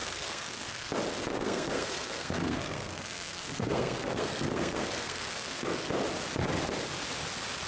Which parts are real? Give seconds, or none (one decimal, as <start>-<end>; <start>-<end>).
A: 0.9-1.3; 5.9-7.7